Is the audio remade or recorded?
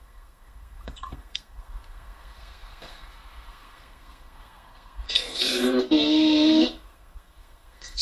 remade